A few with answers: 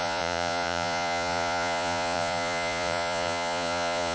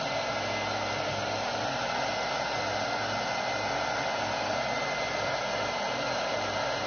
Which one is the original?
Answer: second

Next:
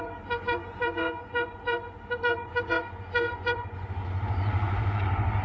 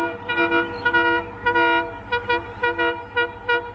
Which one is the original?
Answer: second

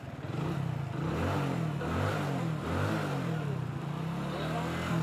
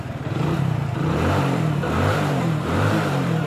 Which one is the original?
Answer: first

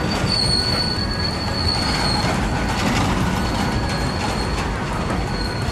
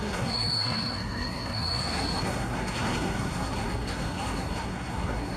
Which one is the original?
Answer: first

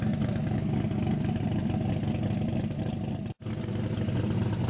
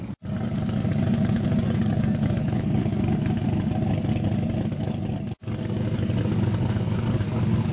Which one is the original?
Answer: first